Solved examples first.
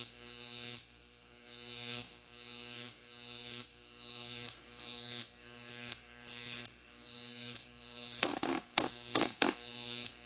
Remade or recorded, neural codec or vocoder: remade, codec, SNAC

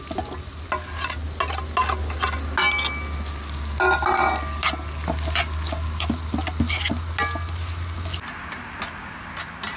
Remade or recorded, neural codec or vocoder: recorded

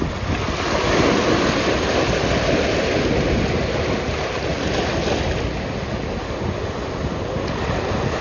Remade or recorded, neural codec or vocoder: recorded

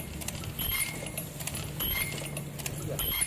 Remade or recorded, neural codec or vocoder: recorded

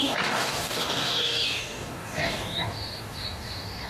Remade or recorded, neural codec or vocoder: remade, codec, DAC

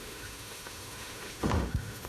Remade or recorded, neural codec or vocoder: remade, autoencoder, DAC-VAE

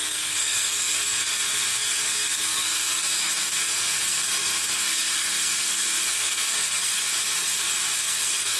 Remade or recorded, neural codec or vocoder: remade, codec, SNAC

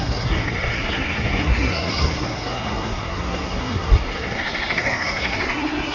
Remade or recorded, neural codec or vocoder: remade, codec, SNAC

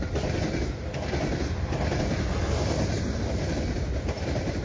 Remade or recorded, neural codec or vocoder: recorded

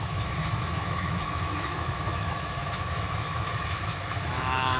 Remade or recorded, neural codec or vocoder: remade, autoencoder, DAC-VAE